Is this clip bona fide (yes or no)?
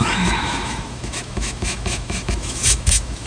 no